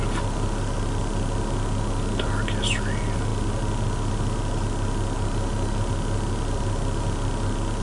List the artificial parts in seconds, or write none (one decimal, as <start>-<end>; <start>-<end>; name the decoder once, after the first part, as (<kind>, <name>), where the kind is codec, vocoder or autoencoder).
none